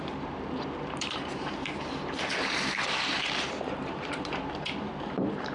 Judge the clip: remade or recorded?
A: remade